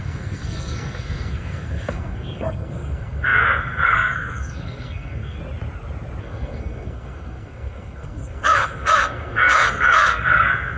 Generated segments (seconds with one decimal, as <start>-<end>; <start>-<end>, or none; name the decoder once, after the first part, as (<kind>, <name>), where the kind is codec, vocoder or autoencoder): 0.0-5.4 (codec, SNAC); 6.2-10.8